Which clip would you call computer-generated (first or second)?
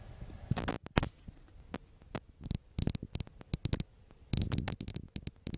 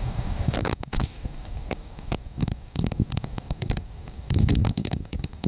second